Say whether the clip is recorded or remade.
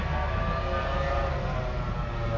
recorded